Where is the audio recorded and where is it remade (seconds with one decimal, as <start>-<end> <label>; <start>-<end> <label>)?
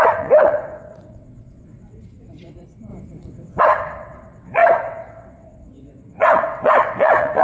0.0-7.4 remade